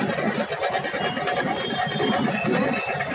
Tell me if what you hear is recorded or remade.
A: recorded